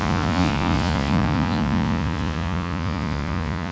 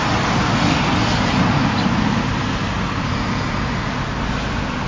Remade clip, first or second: first